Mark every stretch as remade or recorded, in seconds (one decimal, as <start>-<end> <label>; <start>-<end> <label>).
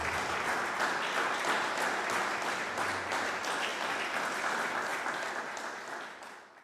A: 0.0-6.6 recorded